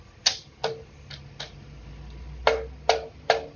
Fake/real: real